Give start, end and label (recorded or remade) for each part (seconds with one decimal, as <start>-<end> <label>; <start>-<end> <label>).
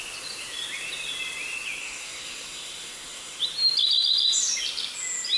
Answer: 0.0-1.8 recorded; 1.8-3.4 remade; 3.4-5.4 recorded